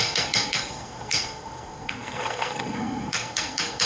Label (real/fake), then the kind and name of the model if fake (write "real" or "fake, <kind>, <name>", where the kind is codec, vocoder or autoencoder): fake, codec, SNAC